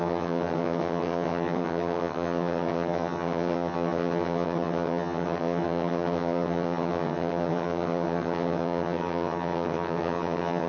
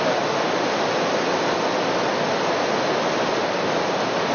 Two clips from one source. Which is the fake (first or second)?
first